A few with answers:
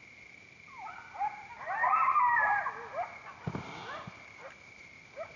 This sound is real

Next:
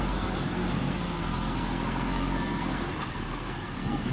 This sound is fake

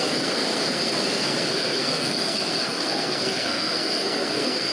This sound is fake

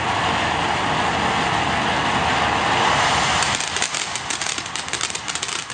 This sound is real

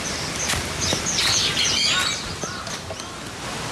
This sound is real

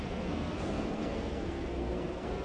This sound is fake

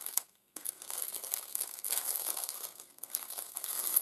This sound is fake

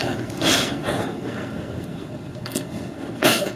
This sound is fake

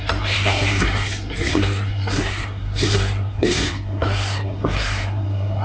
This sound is fake